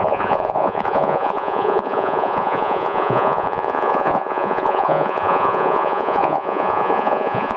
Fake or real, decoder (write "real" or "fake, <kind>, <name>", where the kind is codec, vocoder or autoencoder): fake, vocoder, Vocos